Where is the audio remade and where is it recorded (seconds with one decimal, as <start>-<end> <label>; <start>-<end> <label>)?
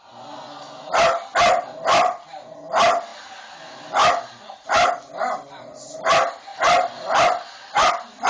0.0-8.3 recorded